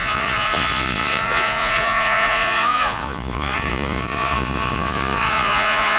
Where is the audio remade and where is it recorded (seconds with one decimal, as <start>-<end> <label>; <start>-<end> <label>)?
0.0-6.0 remade